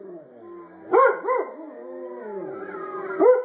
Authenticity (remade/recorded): recorded